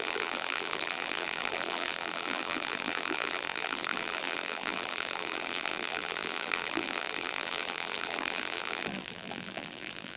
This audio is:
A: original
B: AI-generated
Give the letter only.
B